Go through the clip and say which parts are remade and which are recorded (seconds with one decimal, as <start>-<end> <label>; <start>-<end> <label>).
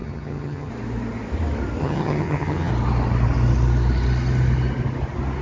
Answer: 0.0-0.7 remade; 0.7-1.8 recorded; 1.8-2.7 remade; 2.7-5.4 recorded